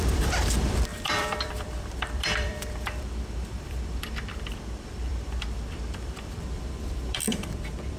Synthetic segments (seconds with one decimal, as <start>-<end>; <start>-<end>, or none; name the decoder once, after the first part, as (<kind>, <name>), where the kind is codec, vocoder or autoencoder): 0.0-8.0 (vocoder, BigVGAN v2)